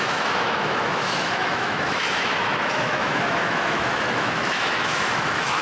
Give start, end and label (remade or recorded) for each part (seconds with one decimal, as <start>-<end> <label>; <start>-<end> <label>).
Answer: 0.0-5.6 remade